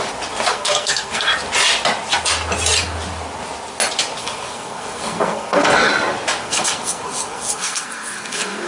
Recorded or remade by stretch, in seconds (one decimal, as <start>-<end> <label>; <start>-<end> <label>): 0.0-0.5 recorded; 0.5-1.3 remade; 1.3-4.2 recorded; 4.2-5.9 remade; 5.9-6.4 recorded; 6.4-8.7 remade